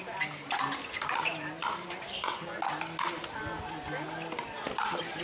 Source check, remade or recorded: recorded